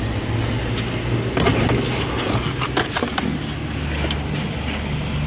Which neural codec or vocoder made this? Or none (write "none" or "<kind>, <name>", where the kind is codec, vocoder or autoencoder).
none